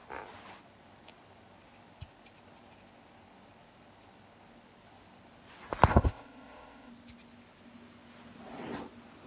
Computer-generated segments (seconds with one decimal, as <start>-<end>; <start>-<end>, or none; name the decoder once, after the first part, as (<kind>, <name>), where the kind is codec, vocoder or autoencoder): 5.9-6.9 (codec, ZipCodec)